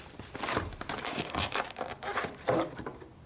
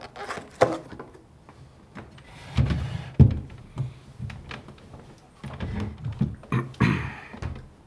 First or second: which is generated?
first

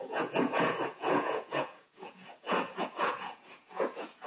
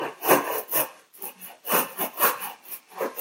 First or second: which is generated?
first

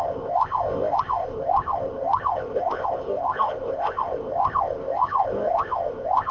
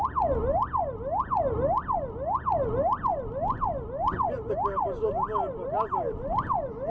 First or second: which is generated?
first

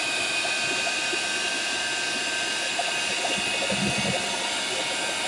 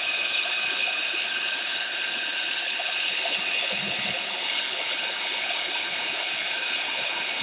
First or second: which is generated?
second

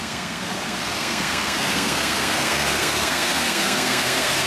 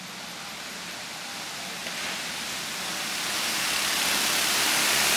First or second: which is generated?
first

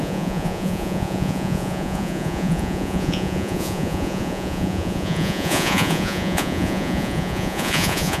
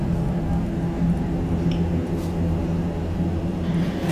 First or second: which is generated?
first